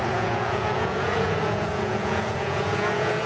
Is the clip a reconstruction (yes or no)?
yes